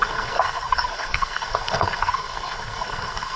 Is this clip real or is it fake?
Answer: fake